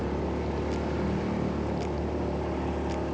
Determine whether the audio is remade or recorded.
recorded